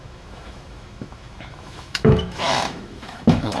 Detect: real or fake fake